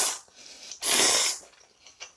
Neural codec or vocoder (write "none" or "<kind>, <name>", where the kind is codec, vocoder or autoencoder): none